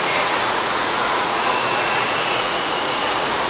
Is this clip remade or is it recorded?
remade